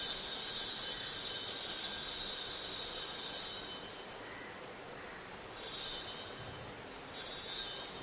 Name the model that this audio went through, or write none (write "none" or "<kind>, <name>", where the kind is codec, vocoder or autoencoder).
none